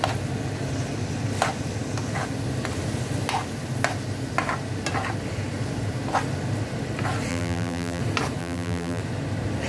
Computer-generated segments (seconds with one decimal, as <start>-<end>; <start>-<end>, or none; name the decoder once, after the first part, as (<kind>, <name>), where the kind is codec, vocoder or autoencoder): 7.3-8.0 (vocoder, BigVGAN v2); 8.4-9.0